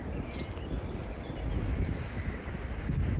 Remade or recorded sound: recorded